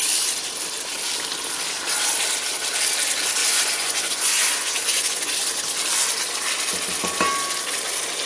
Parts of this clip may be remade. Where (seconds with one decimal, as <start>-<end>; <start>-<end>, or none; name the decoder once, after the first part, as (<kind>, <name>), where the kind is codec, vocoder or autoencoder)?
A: 3.4-5.3 (vocoder, Vocos)